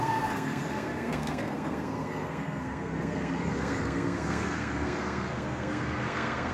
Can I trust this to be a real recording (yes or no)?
no